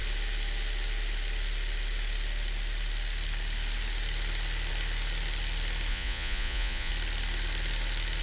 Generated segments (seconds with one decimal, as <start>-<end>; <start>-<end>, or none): 5.9-6.9